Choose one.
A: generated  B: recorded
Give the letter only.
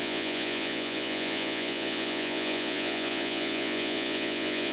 A